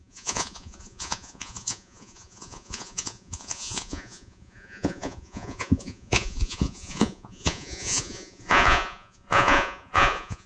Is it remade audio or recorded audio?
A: remade